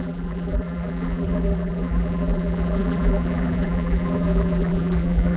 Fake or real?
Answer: fake